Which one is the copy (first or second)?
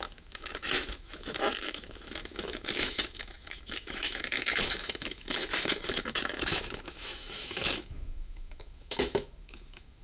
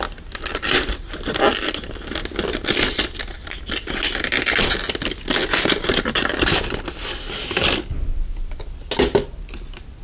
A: first